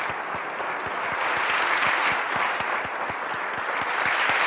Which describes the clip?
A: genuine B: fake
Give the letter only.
A